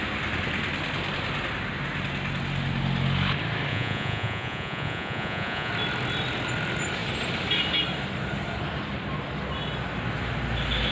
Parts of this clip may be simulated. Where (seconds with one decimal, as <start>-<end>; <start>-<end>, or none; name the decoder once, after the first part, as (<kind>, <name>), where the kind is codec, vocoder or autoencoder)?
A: 3.7-5.7 (vocoder, Vocos)